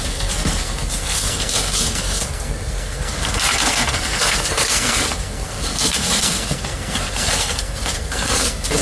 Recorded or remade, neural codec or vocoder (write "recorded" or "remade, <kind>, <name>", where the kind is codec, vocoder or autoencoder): remade, codec, SNAC